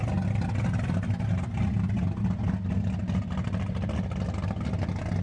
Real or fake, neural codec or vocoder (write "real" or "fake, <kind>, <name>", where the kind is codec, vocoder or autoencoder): real